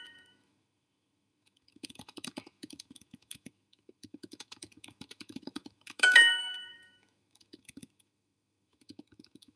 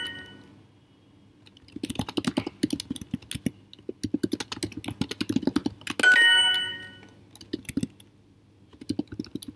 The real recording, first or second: second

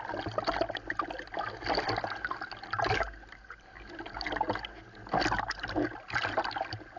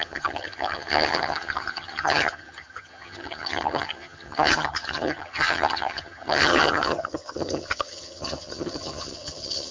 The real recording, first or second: first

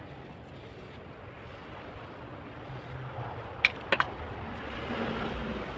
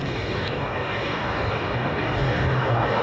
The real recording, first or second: first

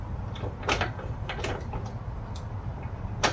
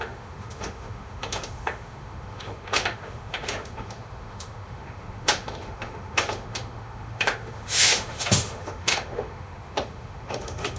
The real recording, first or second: first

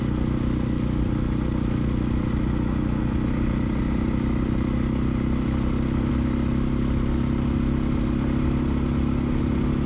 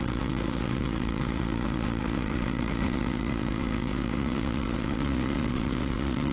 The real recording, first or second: first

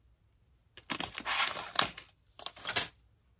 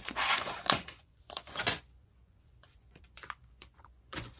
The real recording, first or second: first